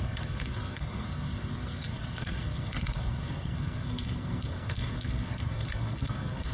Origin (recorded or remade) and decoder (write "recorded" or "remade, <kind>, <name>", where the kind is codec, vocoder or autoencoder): remade, codec, SNAC